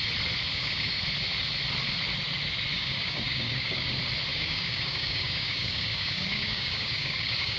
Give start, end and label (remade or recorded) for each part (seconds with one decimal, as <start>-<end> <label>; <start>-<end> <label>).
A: 0.0-0.5 recorded; 0.5-1.0 remade; 1.0-2.7 recorded; 2.7-3.9 remade; 3.9-4.3 recorded; 4.3-7.6 remade